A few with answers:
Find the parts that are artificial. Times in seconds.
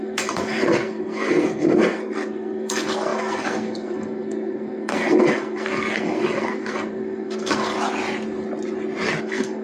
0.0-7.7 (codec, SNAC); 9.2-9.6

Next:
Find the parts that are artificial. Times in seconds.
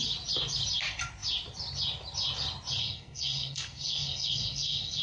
2.8-5.0 (codec, SNAC)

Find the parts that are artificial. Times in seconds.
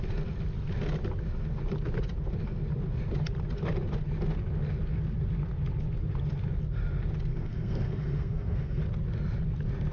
7.3-8.8 (codec, SNAC)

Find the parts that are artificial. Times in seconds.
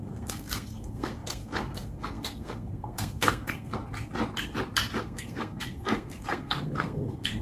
0.0-3.8 (codec, SNAC); 5.0-7.4